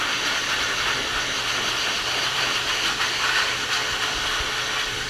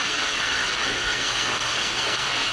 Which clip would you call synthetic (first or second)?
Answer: second